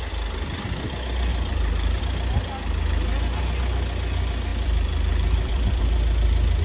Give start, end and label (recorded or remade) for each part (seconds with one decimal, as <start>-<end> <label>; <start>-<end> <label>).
0.0-1.3 recorded; 1.3-2.0 remade; 2.0-4.5 recorded; 4.5-5.8 remade; 5.8-6.6 recorded